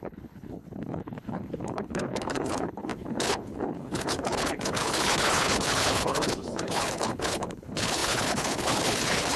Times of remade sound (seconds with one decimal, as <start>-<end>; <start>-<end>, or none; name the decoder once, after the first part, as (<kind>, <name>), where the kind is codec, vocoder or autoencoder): 0.0-9.4 (codec, HILCodec)